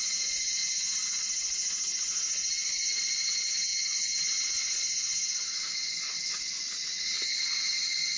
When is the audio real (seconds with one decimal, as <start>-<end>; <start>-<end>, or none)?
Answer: 0.0-8.2